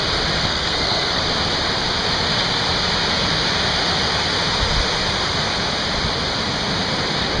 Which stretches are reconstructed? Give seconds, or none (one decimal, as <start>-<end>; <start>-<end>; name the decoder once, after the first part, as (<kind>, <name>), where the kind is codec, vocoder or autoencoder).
0.4-1.2 (codec, SNAC)